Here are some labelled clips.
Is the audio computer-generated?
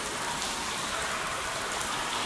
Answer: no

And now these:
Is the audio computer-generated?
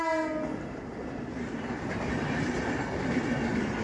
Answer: no